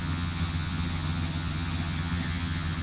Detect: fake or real fake